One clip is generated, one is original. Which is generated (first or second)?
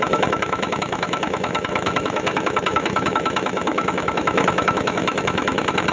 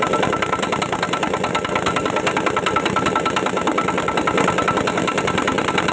first